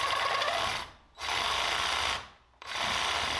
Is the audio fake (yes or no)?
no